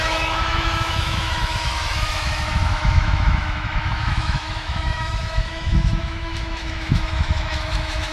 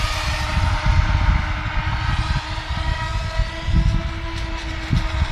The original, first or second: second